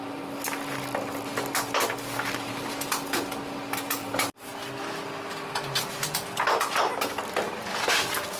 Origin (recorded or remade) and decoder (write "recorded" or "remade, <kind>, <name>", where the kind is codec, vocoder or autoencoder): recorded